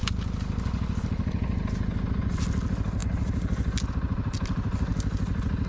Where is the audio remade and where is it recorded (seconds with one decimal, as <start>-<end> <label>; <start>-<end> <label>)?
0.0-5.7 recorded